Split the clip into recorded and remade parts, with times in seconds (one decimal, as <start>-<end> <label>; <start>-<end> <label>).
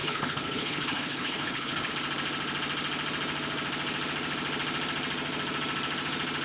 0.0-1.9 remade; 1.9-6.4 recorded